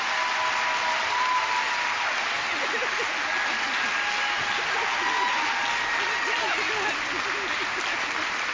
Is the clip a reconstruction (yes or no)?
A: no